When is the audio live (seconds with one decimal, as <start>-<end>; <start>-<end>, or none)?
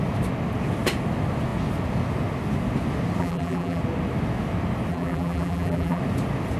0.0-3.2; 3.8-4.9; 6.0-6.6